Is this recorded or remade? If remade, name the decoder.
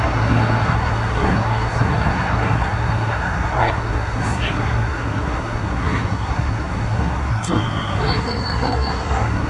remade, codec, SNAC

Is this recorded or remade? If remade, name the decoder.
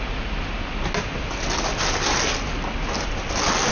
recorded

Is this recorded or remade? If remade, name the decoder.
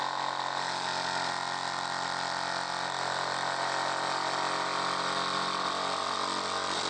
recorded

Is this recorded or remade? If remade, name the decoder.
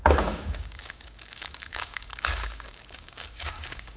remade, codec, DAC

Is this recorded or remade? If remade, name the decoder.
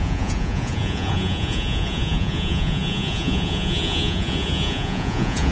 remade, vocoder, Vocos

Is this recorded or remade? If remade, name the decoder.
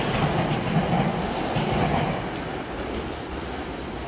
recorded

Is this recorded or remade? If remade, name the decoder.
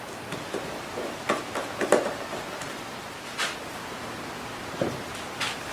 recorded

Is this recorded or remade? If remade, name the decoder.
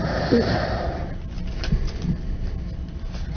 remade, vocoder, BigVGAN v2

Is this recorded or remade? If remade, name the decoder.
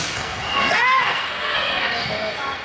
remade, codec, SNAC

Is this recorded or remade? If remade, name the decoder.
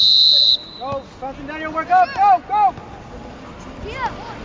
recorded